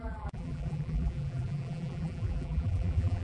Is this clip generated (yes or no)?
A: yes